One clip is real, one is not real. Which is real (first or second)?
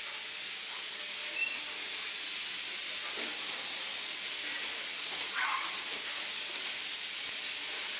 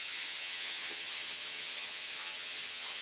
first